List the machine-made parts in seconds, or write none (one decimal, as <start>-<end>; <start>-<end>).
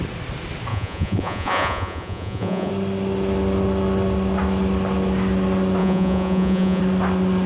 0.7-2.7; 5.8-6.8